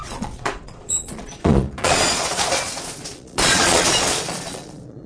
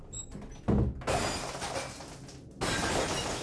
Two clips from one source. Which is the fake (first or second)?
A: first